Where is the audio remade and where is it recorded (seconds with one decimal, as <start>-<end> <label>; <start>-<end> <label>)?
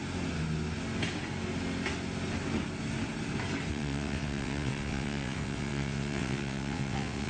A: 0.0-3.7 recorded; 3.7-7.3 remade